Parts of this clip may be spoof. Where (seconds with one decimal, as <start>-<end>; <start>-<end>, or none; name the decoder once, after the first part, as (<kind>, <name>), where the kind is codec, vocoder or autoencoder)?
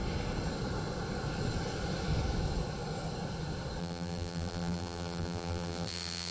3.8-6.3 (vocoder, BigVGAN v2)